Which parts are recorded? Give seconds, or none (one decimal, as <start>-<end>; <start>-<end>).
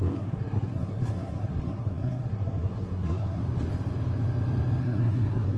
3.4-4.8